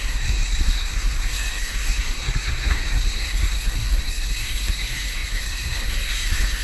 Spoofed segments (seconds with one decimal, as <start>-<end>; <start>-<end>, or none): 0.0-6.6